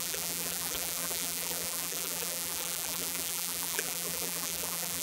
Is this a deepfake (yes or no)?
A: yes